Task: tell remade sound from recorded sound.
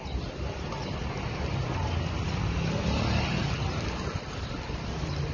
recorded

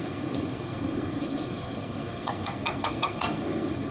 remade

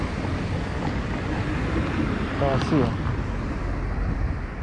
recorded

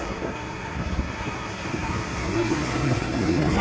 remade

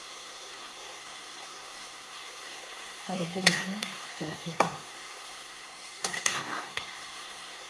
remade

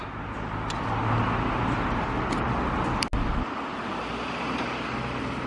recorded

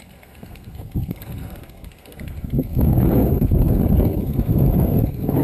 remade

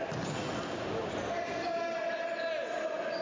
recorded